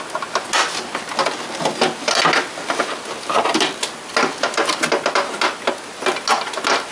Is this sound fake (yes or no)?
no